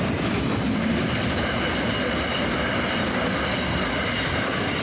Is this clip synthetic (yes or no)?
no